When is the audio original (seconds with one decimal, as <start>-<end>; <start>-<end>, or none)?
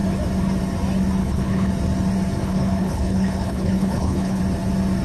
0.0-1.2; 1.7-2.4; 4.4-5.0